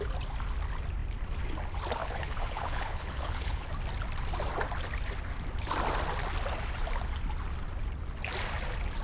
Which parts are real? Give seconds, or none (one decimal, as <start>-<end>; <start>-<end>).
0.0-2.0; 3.7-9.0